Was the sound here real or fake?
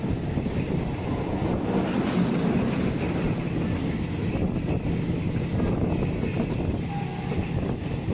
real